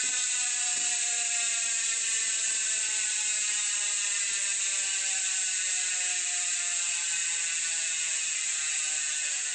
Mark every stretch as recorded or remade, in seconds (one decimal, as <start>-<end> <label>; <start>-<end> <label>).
0.0-9.5 recorded